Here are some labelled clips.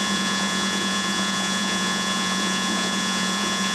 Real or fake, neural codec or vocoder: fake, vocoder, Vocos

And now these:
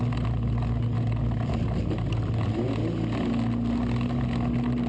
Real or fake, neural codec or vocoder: real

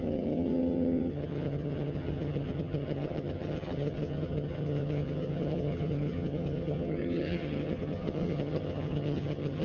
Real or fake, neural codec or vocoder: fake, vocoder, HiFi-GAN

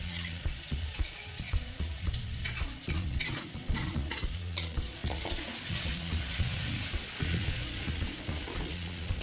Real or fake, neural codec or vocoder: fake, vocoder, Vocos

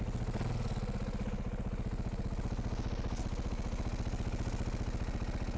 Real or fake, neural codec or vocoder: real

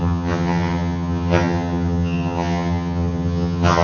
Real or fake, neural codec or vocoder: fake, vocoder, HiFi-GAN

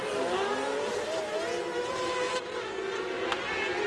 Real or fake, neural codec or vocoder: real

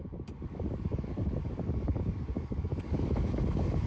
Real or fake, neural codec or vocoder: fake, codec, DAC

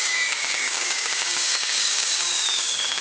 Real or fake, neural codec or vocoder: fake, codec, DAC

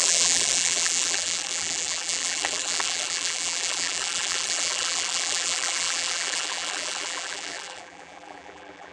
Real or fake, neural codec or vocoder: fake, vocoder, BigVGAN v2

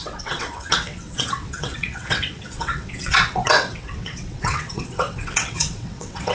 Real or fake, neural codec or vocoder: fake, vocoder, WaveNeXt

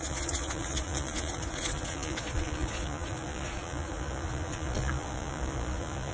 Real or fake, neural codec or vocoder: fake, vocoder, Vocos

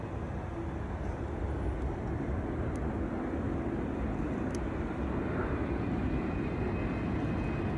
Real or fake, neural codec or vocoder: real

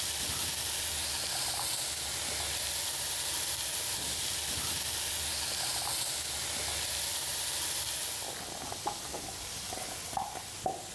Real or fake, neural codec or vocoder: real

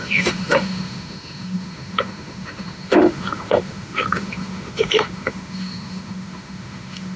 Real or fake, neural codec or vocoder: fake, autoencoder, DAC-VAE